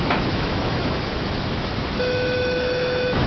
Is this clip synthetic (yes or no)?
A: yes